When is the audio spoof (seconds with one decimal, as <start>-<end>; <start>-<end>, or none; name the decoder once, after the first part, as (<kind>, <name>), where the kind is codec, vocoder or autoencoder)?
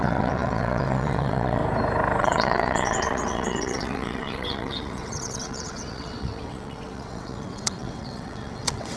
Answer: 0.0-1.6 (vocoder, WaveNeXt); 2.2-9.0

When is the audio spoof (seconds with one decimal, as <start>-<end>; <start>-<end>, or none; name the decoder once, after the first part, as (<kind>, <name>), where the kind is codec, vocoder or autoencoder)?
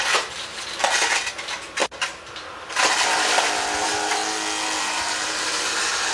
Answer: 0.0-0.5 (vocoder, BigVGAN v2); 1.3-1.8; 2.6-4.2; 4.8-6.1